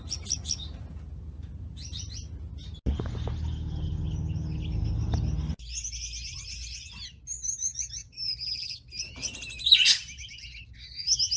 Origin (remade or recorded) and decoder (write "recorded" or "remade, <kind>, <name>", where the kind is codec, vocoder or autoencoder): recorded